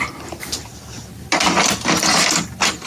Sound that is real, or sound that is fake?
real